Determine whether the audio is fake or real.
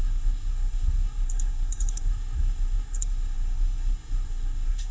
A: fake